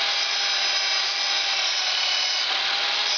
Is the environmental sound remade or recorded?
recorded